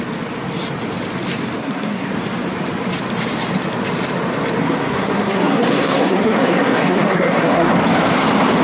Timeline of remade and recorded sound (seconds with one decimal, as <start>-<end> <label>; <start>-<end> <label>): 0.0-1.6 recorded; 1.6-2.1 remade; 2.1-4.6 recorded; 4.6-7.7 remade; 7.7-8.6 recorded